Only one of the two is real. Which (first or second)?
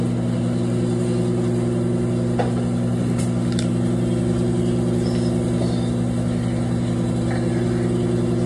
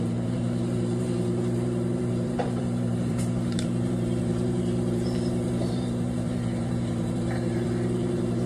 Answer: first